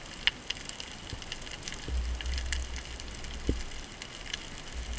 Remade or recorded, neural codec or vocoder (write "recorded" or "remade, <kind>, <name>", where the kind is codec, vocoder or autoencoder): recorded